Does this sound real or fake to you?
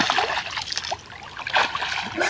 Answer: real